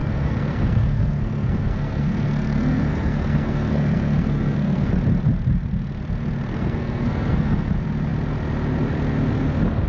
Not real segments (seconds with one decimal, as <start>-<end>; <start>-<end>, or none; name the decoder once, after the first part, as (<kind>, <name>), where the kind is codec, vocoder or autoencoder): 0.0-4.9 (codec, SNAC); 6.5-7.7